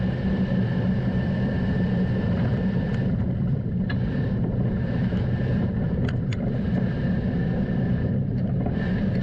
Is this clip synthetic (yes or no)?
yes